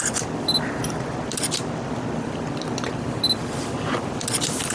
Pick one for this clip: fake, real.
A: real